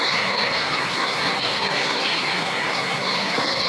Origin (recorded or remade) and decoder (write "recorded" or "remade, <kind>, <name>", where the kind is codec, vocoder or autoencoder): remade, codec, SNAC